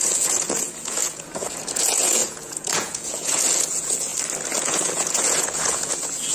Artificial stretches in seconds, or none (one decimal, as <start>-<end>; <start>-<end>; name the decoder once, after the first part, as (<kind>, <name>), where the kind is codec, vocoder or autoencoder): 0.0-4.1 (vocoder, Vocos); 4.6-6.3